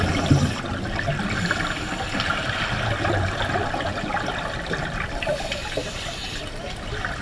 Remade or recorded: recorded